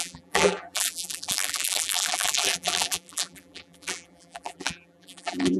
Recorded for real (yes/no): no